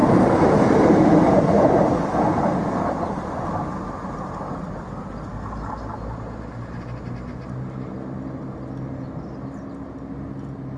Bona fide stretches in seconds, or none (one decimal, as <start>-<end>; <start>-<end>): 0.0-10.8